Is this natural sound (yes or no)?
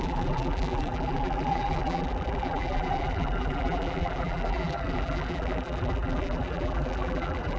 no